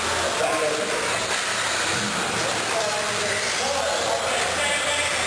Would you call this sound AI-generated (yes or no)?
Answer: no